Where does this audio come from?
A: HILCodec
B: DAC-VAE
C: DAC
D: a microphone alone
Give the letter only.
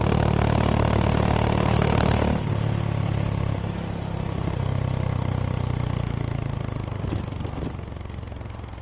D